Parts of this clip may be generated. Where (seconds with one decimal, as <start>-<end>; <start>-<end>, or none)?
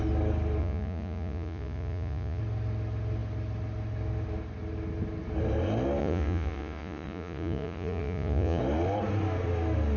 0.6-2.4; 6.0-8.6